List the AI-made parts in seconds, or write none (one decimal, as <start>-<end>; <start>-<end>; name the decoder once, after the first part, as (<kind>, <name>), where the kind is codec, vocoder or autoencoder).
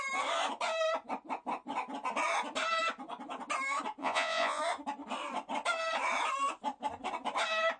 4.0-4.6 (vocoder, Vocos)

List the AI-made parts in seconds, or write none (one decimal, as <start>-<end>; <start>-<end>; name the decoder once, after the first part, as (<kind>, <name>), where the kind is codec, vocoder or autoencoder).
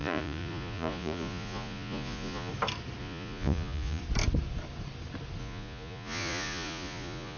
0.0-2.5 (vocoder, Vocos); 3.0-4.0; 5.4-7.4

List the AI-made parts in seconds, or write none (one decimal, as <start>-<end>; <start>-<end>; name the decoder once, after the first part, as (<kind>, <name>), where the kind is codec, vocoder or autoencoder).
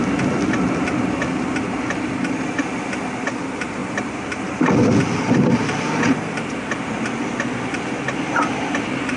none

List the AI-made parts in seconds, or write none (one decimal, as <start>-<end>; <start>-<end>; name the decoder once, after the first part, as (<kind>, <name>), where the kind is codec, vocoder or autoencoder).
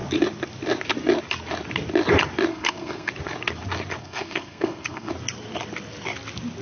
2.5-3.1 (codec, SNAC); 4.0-5.1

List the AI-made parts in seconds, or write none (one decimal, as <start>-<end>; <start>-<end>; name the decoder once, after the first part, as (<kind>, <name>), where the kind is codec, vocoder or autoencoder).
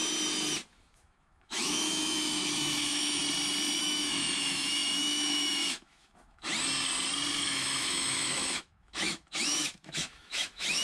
0.7-3.2 (autoencoder, DAC-VAE); 3.8-6.5; 7.3-10.8